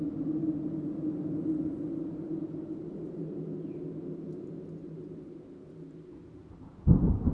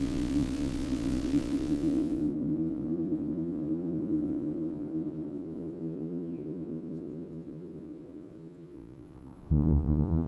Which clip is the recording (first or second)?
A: first